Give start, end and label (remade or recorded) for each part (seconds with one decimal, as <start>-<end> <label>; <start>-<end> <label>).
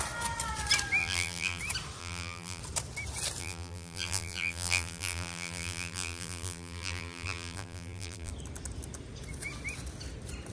0.0-1.0 recorded; 1.0-1.6 remade; 1.6-2.0 recorded; 2.0-2.6 remade; 2.6-3.4 recorded; 3.4-8.3 remade; 8.3-10.5 recorded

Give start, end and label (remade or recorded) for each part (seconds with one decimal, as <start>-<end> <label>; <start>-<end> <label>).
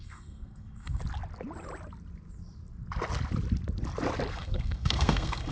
0.0-1.0 remade; 1.0-4.3 recorded; 4.3-5.5 remade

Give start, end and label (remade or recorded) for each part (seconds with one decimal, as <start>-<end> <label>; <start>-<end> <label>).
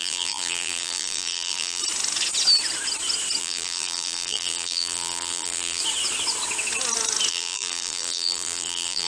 0.0-1.8 remade; 1.8-3.4 recorded; 3.4-5.8 remade; 5.8-7.3 recorded; 7.3-9.1 remade